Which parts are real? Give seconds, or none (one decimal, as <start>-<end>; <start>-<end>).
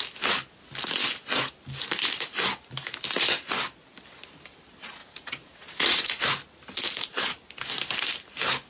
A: 0.0-5.0; 6.4-8.7